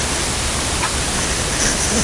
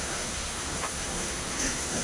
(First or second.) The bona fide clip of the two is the first